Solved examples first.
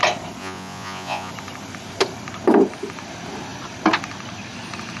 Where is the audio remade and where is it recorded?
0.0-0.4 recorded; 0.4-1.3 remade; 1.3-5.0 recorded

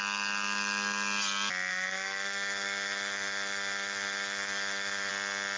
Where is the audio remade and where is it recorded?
0.0-1.7 recorded; 1.7-5.1 remade; 5.1-5.6 recorded

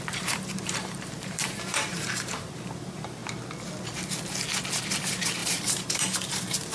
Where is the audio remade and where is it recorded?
0.0-3.2 remade; 3.2-5.0 recorded; 5.0-6.7 remade